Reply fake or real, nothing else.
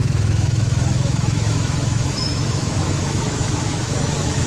fake